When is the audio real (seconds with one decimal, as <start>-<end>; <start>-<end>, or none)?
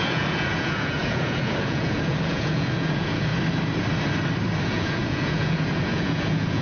3.3-4.6